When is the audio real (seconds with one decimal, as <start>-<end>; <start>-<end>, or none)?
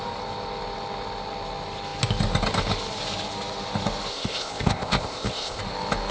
0.0-4.1; 5.6-6.1